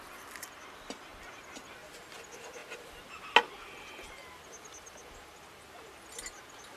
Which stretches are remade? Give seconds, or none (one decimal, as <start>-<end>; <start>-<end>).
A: none